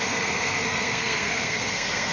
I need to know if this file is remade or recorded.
remade